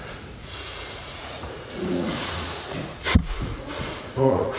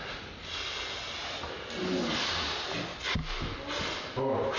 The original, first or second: second